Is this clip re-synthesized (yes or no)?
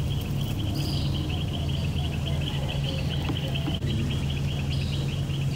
no